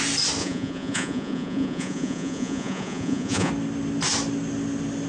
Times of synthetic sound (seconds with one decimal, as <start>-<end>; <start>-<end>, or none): 0.4-3.5